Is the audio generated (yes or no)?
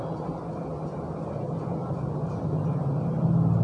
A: no